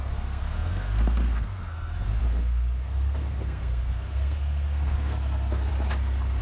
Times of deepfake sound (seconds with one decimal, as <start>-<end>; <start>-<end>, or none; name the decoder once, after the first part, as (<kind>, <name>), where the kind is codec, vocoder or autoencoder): 0.0-5.7 (codec, SNAC)